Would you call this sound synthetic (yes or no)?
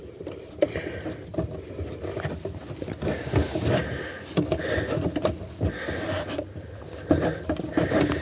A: no